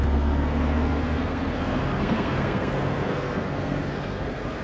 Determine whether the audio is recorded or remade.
remade